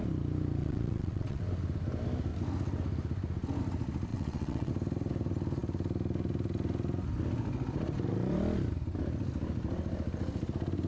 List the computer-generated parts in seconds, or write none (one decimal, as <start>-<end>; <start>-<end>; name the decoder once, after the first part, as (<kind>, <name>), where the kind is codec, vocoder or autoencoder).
0.6-1.4 (vocoder, WaveNeXt); 4.1-4.7